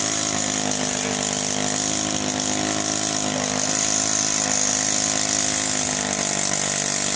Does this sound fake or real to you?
real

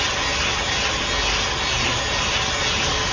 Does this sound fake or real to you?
real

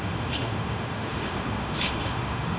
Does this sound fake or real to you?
fake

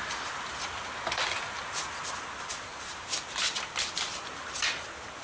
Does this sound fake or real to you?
real